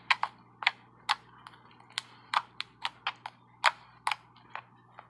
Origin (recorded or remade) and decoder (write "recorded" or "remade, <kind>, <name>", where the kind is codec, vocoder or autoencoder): recorded